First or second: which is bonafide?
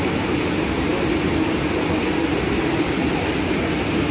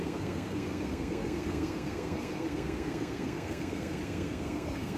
first